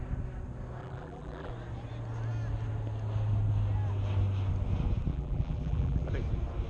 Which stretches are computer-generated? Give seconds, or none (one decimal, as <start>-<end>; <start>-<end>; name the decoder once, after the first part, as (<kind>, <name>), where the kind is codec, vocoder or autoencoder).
0.8-1.5 (vocoder, BigVGAN v2); 5.1-6.1